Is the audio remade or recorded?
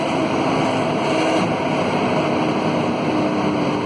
recorded